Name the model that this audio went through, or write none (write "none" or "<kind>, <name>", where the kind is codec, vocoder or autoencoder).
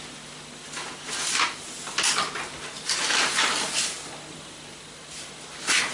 none